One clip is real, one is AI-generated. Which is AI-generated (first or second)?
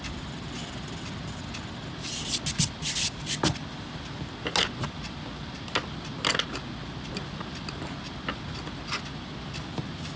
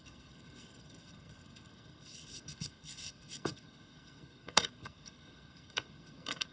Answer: second